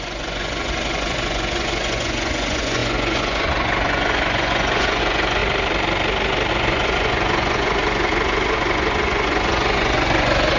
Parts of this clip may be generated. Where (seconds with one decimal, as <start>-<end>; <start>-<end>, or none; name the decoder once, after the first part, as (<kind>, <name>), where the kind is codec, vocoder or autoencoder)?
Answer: 0.0-5.4 (vocoder, Vocos); 6.5-10.6